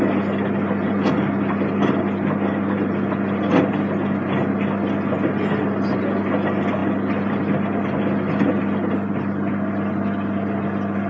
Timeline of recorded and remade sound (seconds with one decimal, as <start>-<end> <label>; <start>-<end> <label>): 0.0-11.1 recorded